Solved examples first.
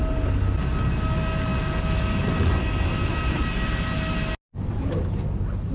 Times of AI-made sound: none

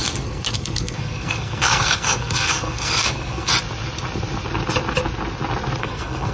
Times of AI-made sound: 0.0-3.5 (codec, SNAC); 5.8-6.3

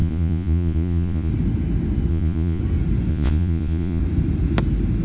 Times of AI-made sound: 0.0-1.3 (vocoder, Vocos); 2.1-2.6; 3.1-4.0

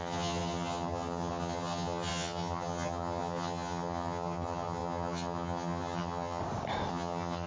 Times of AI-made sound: 0.0-6.4 (vocoder, HiFi-GAN); 6.9-7.5

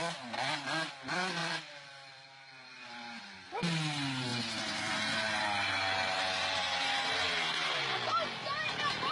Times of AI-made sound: 1.4-3.2 (vocoder, BigVGAN v2); 4.3-4.9

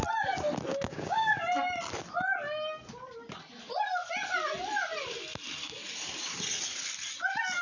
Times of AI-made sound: 0.7-1.4 (codec, DAC)

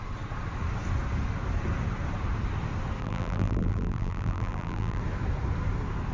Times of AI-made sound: 3.0-5.0 (vocoder, BigVGAN v2)